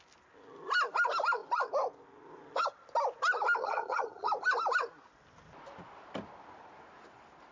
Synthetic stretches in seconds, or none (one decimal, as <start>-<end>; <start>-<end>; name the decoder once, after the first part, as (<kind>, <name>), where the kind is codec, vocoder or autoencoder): 3.6-4.3 (vocoder, HiFi-GAN)